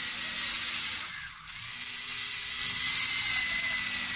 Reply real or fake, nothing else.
real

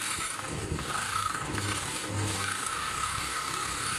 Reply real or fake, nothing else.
fake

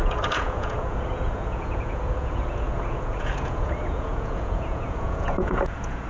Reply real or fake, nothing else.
fake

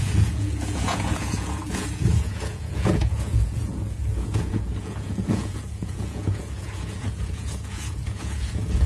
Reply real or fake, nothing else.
fake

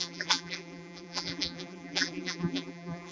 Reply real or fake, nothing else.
fake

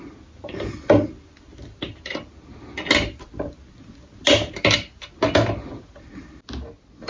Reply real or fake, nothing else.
real